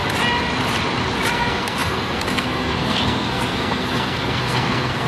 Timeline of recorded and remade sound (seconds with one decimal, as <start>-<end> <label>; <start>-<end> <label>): 0.0-1.3 recorded; 1.3-5.1 remade